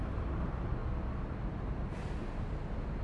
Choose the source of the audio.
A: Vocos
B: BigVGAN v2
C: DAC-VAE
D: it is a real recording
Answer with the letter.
D